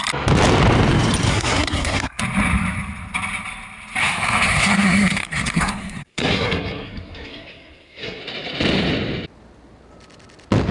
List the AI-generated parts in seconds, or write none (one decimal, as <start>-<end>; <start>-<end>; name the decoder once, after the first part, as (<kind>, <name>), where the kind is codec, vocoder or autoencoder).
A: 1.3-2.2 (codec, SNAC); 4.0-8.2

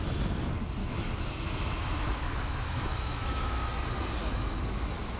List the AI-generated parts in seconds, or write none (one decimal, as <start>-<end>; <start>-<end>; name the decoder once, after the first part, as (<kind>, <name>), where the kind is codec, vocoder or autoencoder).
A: 0.8-3.7 (autoencoder, DAC-VAE); 4.2-5.2

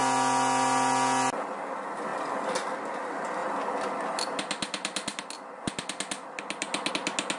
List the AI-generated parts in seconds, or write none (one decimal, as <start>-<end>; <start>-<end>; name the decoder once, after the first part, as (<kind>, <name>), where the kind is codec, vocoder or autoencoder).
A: none